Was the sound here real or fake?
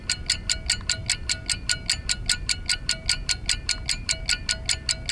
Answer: real